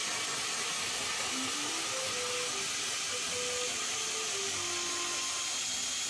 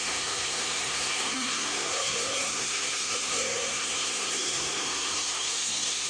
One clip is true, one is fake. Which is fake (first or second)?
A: second